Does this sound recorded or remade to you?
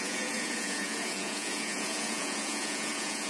remade